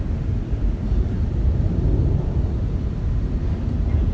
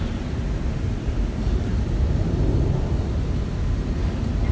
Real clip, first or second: second